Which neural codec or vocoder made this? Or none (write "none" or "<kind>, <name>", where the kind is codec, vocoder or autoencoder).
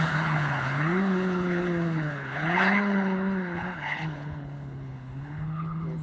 codec, HILCodec